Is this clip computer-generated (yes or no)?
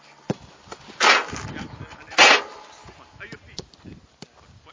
no